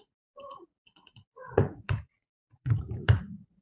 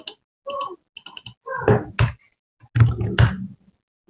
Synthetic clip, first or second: first